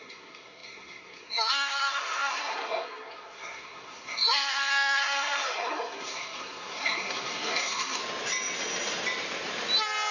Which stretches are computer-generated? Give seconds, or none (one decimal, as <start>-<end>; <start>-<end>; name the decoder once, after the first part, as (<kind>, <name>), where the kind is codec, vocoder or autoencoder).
0.0-8.0 (codec, SNAC)